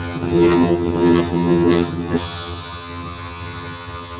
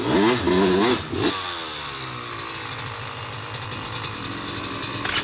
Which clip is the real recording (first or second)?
second